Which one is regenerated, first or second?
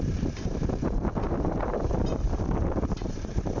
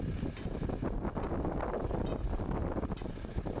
first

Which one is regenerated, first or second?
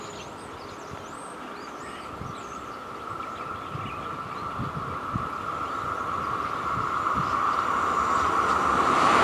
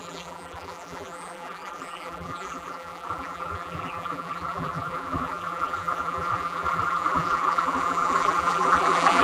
second